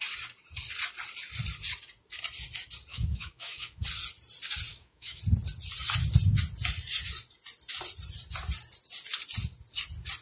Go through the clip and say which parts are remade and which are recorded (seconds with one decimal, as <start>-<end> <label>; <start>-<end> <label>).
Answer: 0.0-2.9 recorded; 2.9-3.8 remade; 3.8-4.7 recorded; 4.7-5.2 remade; 5.2-10.2 recorded